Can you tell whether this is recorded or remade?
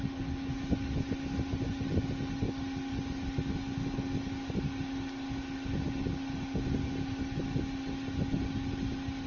recorded